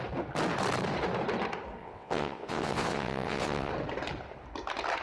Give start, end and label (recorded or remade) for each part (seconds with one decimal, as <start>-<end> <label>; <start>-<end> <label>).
0.0-1.8 recorded; 1.8-3.7 remade; 3.7-5.0 recorded